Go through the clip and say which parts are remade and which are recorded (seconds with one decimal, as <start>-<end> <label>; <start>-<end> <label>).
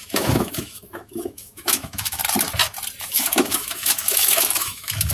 0.0-2.2 remade; 2.2-3.0 recorded; 3.0-5.1 remade